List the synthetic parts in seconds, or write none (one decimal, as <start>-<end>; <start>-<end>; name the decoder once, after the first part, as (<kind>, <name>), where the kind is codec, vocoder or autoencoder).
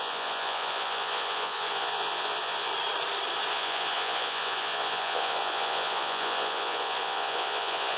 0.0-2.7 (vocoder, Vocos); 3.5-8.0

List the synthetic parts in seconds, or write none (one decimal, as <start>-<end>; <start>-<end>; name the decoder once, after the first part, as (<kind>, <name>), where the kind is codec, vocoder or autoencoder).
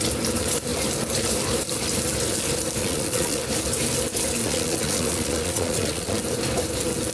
2.8-3.4 (vocoder, Vocos); 4.4-6.2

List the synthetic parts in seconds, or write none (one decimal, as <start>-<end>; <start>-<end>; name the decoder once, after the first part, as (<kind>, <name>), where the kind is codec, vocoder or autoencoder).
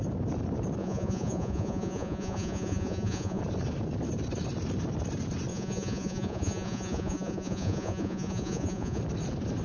0.8-3.4 (vocoder, Vocos); 5.5-9.0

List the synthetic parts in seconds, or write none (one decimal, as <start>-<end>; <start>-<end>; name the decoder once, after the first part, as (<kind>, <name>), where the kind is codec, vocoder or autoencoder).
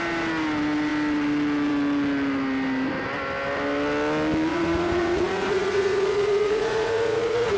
4.5-7.6 (vocoder, Vocos)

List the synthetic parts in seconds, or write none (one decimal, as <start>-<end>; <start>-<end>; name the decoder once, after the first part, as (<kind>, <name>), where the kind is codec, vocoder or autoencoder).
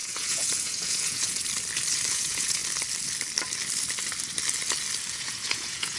0.0-1.4 (vocoder, Vocos); 2.1-2.6; 5.1-6.0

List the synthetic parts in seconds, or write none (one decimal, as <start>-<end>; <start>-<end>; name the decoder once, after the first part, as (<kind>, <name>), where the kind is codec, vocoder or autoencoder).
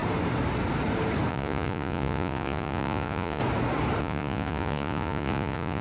1.3-3.4 (vocoder, Vocos); 4.0-5.8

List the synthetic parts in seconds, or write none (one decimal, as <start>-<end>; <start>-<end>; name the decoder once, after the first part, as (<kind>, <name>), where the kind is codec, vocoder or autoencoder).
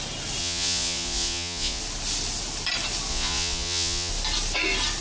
0.4-1.8 (vocoder, Vocos); 3.1-4.1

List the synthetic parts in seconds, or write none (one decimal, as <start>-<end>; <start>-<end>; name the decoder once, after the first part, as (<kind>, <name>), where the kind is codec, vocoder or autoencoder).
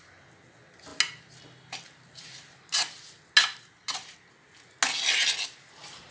none